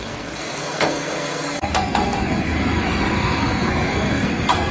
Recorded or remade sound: remade